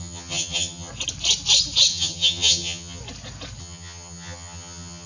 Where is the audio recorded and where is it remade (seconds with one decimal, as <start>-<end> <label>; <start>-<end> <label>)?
0.0-0.9 remade; 0.9-1.9 recorded; 1.9-3.0 remade; 3.0-3.6 recorded; 3.6-5.1 remade